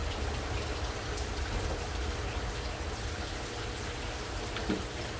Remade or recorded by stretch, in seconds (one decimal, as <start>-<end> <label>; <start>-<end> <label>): 0.0-5.2 recorded